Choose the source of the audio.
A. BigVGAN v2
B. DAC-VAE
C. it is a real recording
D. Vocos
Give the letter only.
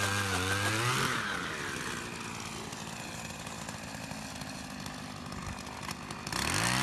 C